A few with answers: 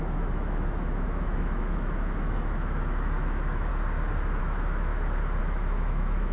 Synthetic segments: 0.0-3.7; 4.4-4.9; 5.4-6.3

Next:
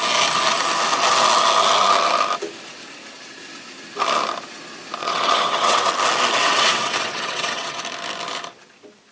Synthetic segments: 5.0-5.9; 6.4-7.8

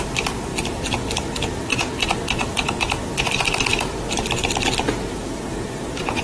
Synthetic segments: 3.7-6.2

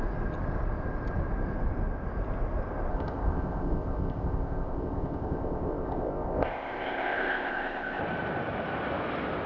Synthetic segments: 2.9-8.0

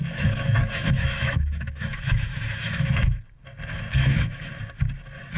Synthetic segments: 0.0-3.2; 3.9-4.5